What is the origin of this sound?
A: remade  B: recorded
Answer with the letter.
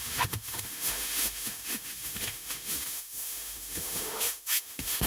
A